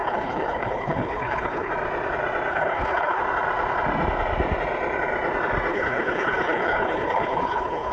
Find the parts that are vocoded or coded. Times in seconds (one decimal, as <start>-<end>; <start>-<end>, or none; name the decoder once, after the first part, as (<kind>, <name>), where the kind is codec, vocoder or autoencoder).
0.0-1.7 (codec, HILCodec); 2.5-3.2; 5.7-7.9